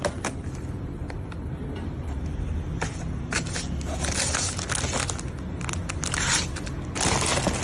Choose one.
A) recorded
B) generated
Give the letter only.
A